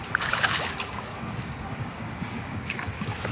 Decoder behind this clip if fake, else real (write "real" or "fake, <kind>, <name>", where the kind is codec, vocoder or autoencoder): fake, codec, DAC